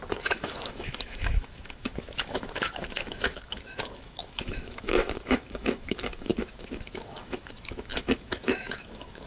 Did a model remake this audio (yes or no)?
yes